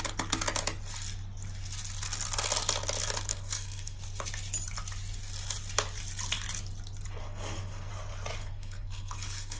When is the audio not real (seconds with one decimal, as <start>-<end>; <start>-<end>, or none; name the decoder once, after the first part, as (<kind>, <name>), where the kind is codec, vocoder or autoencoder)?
3.3-4.0 (codec, SNAC); 7.2-7.9; 8.4-9.6

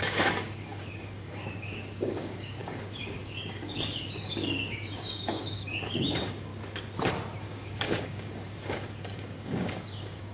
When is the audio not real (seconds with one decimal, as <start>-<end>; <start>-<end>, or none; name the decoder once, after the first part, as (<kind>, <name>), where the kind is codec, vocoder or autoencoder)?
0.0-6.5 (codec, DAC); 7.4-10.3

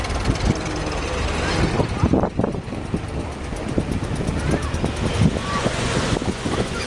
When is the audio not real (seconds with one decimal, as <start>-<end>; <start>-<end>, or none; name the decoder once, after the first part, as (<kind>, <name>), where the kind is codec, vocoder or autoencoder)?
5.4-6.9 (vocoder, Vocos)

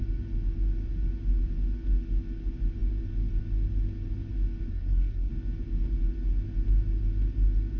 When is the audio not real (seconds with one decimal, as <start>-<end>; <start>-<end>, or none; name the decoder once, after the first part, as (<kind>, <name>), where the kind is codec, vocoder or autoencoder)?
4.7-5.3 (codec, SNAC)

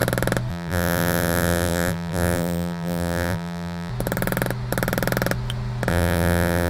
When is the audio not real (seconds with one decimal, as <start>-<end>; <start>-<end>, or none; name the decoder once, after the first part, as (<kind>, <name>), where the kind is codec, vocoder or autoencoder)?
0.5-3.9 (vocoder, BigVGAN v2); 5.9-6.7

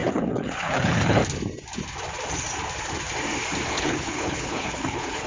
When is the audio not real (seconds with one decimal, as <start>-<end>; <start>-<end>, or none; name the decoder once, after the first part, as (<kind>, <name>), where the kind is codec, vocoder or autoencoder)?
0.0-1.2 (codec, HILCodec); 3.7-5.3

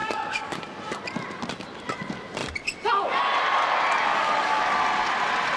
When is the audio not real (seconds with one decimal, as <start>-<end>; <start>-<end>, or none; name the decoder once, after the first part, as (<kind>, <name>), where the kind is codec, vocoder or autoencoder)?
0.0-0.6 (codec, DAC); 4.1-4.6